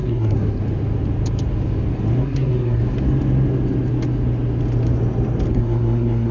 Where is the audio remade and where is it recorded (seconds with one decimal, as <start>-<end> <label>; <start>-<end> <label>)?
0.0-0.6 remade; 0.6-2.2 recorded; 2.2-2.8 remade; 2.8-5.5 recorded; 5.5-6.3 remade